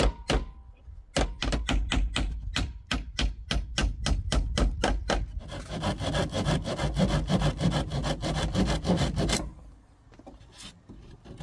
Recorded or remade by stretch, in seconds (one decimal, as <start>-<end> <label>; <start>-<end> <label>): 0.0-11.4 recorded